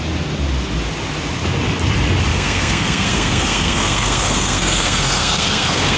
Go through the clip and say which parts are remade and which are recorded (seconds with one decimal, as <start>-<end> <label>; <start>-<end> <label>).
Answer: 0.0-2.3 recorded; 2.3-6.0 remade